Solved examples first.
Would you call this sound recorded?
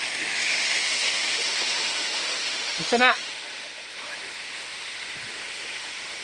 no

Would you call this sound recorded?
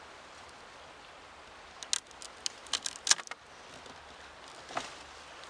yes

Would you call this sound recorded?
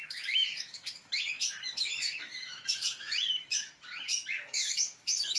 no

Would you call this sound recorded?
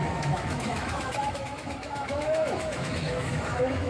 no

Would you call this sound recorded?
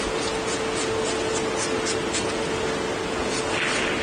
yes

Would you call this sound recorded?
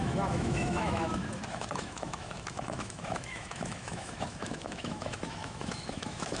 no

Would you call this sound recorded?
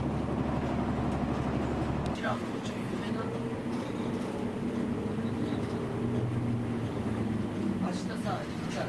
yes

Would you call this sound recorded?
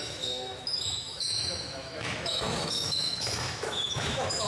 no